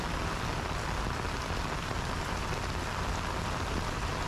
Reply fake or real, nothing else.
real